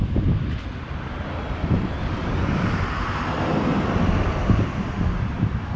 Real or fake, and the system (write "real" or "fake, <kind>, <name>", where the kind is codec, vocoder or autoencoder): fake, vocoder, BigVGAN v2